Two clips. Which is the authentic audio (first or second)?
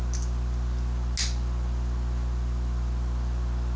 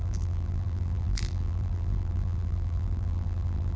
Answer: first